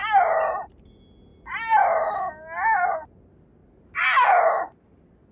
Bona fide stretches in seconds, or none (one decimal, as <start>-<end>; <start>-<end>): 0.0-5.3